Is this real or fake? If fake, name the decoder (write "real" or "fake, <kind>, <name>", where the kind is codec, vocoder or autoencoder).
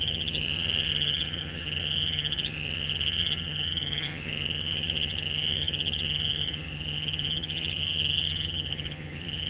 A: fake, vocoder, HiFi-GAN